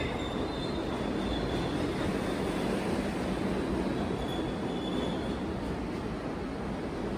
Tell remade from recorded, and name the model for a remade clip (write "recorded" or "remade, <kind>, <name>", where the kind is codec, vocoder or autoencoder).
recorded